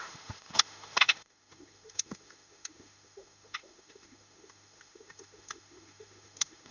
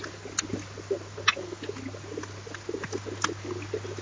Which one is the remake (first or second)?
first